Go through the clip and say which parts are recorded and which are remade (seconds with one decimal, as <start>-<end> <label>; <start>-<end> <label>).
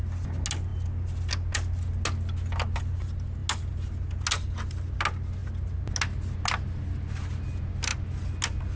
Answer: 0.0-8.8 recorded